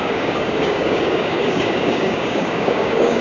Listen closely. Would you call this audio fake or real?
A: fake